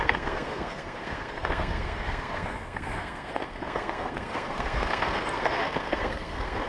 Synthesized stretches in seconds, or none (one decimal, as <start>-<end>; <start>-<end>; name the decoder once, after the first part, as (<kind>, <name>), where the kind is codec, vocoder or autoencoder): 0.0-6.7 (codec, SNAC)